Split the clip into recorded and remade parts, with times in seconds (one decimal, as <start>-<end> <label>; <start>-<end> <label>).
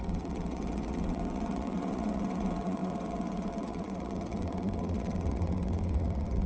0.0-6.5 remade